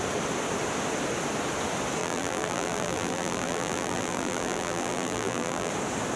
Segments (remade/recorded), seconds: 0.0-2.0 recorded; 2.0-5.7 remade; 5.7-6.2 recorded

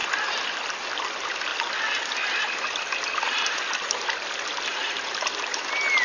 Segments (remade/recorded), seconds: 0.0-6.0 recorded

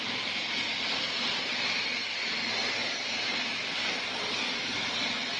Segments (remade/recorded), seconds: 0.0-5.4 recorded